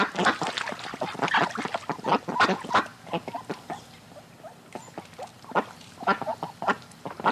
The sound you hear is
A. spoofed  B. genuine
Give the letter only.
B